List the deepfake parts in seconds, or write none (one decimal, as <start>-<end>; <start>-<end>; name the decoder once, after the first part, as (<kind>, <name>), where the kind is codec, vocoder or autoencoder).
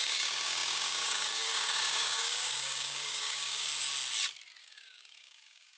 0.0-3.7 (codec, DAC); 4.6-5.8